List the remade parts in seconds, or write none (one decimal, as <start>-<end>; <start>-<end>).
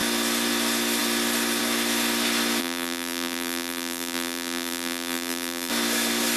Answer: 2.6-5.7